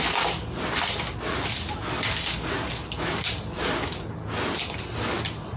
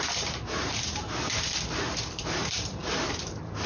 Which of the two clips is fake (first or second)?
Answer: second